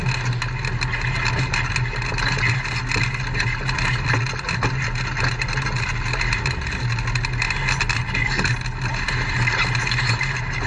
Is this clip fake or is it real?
real